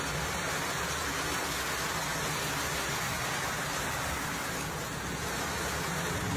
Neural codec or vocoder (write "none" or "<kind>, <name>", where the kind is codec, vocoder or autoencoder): none